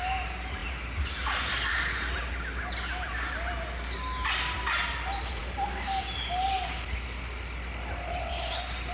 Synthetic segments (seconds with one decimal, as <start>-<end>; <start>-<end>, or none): none